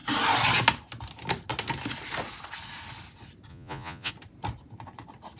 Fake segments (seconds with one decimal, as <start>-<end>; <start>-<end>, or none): 3.5-4.1